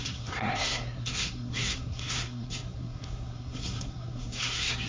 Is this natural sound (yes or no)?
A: no